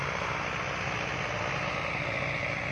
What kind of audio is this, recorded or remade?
recorded